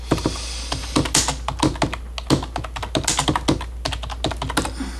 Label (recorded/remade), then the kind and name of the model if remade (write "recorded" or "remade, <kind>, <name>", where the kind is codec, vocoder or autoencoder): recorded